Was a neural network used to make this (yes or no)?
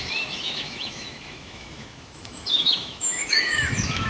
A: yes